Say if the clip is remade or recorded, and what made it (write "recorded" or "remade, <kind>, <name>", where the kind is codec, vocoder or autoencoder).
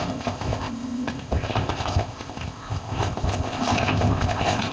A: remade, codec, ZipCodec